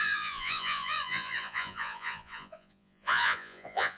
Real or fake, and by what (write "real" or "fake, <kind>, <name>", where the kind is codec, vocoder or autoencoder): fake, vocoder, Vocos